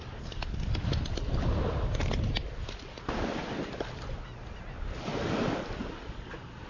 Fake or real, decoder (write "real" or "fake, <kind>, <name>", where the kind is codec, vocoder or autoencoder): real